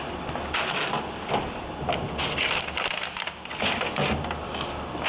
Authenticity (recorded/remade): recorded